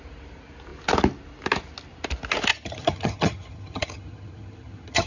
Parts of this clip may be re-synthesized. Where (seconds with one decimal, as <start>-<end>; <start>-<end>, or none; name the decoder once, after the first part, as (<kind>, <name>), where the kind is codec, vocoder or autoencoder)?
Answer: 2.5-5.1 (vocoder, HiFi-GAN)